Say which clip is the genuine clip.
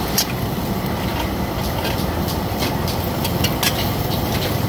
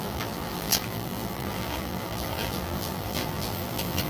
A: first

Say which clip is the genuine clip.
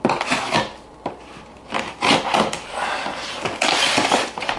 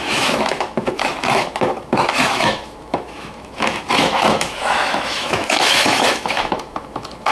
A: first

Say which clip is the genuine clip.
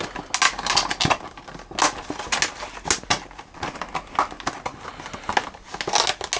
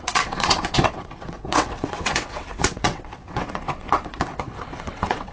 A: first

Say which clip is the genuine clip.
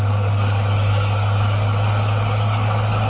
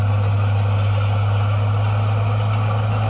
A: second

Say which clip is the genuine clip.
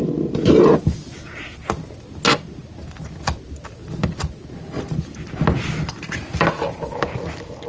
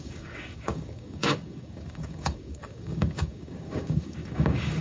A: first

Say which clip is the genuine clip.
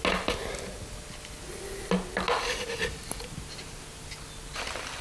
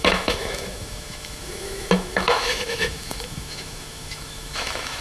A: first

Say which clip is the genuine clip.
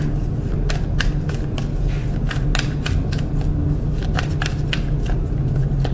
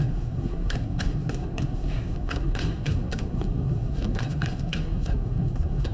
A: first